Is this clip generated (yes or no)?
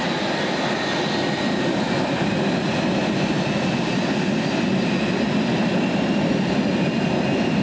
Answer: no